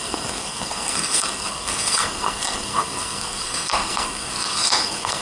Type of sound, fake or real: fake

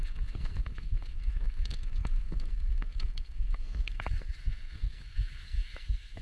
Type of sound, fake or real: fake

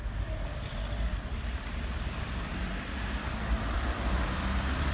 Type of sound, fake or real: fake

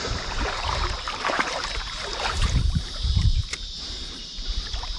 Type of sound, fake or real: fake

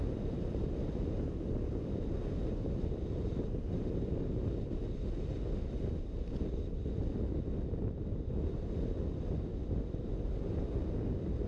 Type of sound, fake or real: real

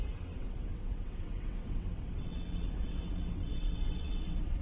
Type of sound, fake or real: fake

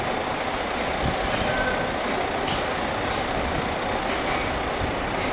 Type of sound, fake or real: real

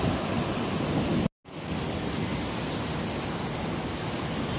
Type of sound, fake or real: real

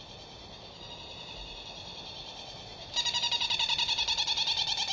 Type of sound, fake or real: real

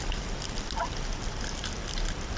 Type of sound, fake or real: real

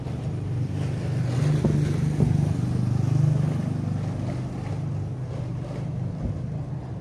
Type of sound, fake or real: real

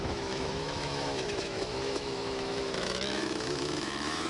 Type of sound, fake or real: fake